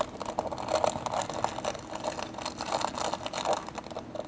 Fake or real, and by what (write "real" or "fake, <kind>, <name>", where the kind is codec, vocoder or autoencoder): real